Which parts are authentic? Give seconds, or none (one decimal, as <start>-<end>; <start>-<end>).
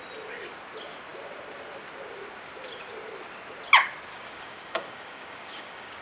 0.0-4.1